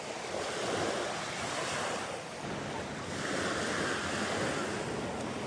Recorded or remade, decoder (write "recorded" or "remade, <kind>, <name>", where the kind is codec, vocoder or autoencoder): recorded